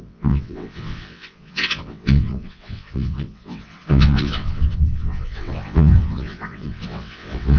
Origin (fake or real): fake